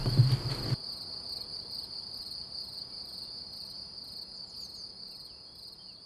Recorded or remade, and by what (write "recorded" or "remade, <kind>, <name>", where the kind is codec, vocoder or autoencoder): recorded